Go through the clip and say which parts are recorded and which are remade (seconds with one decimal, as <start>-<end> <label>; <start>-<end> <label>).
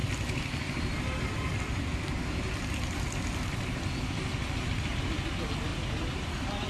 0.0-6.7 recorded